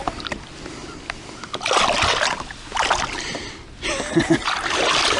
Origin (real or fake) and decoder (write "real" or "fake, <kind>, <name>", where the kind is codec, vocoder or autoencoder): real